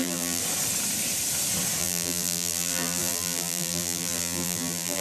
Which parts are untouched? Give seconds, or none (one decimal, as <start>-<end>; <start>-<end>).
0.4-1.8